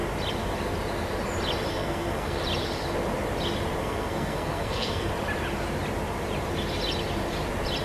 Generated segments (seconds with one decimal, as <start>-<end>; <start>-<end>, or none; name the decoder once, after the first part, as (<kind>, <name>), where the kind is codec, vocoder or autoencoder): 1.7-2.4 (codec, SNAC); 3.8-5.1

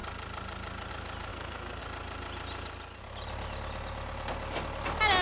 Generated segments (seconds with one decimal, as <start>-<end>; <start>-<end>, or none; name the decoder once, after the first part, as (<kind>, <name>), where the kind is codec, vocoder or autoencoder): 1.3-1.8 (codec, SNAC)

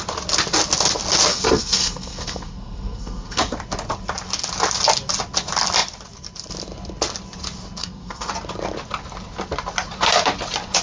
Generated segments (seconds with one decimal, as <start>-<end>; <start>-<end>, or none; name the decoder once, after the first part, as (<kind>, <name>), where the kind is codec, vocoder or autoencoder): 1.3-3.4 (codec, SNAC); 7.8-8.3